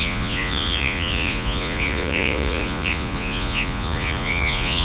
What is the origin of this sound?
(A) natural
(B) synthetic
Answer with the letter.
B